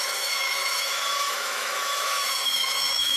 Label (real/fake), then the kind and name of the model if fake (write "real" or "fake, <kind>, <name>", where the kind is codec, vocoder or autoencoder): fake, autoencoder, DAC-VAE